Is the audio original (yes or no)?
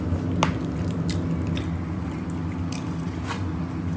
yes